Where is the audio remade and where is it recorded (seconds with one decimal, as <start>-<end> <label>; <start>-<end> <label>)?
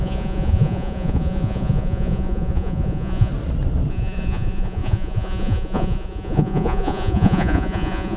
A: 0.0-3.3 remade; 3.3-3.9 recorded; 3.9-8.2 remade